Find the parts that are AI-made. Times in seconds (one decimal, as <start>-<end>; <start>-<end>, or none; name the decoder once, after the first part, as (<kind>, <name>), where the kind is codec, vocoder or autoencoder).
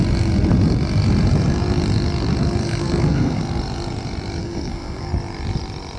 2.6-3.4 (codec, SNAC); 4.4-5.1